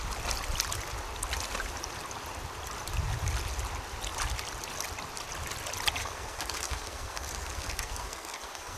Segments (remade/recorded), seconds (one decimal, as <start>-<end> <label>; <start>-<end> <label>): 0.0-6.0 recorded; 6.0-8.8 remade